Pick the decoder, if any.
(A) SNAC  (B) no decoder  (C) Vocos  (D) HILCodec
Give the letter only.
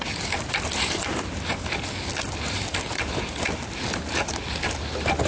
B